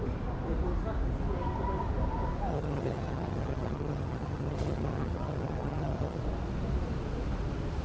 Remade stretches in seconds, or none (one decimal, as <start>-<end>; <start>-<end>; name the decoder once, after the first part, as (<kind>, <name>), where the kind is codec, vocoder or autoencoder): 2.5-6.2 (vocoder, HiFi-GAN)